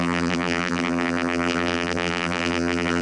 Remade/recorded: remade